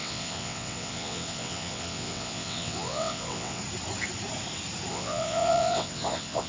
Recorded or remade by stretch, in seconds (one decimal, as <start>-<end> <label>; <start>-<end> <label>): 0.0-3.6 remade; 3.6-4.9 recorded; 4.9-6.5 remade